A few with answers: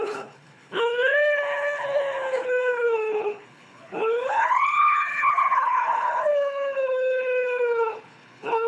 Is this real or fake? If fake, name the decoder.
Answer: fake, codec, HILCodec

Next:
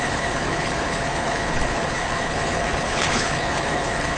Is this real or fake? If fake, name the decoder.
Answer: fake, codec, HILCodec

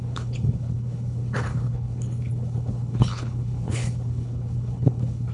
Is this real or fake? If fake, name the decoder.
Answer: fake, codec, HILCodec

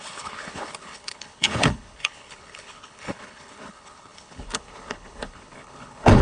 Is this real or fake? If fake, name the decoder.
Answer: fake, codec, HILCodec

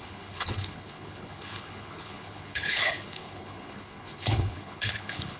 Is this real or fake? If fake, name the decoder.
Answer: fake, codec, HILCodec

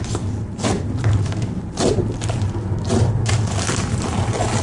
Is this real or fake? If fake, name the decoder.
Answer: real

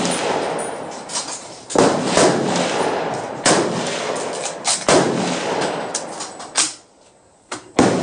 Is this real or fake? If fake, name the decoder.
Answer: real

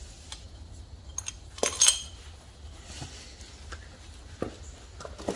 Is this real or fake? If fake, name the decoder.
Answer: real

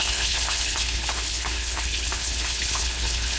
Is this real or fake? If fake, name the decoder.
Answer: fake, codec, HILCodec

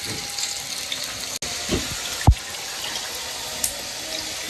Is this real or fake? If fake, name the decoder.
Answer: real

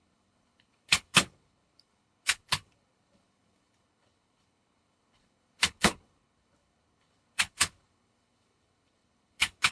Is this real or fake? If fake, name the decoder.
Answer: fake, codec, HILCodec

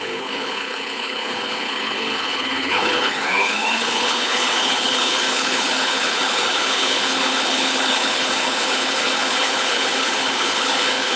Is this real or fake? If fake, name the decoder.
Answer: fake, codec, HILCodec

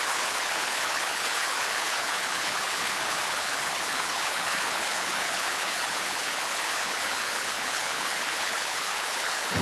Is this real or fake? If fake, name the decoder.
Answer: fake, codec, HILCodec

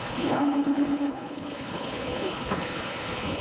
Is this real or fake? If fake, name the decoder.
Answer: fake, codec, HILCodec